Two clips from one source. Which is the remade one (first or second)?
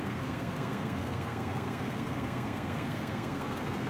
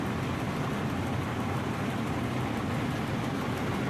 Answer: first